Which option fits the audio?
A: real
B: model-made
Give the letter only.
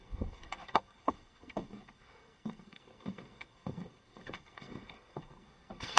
B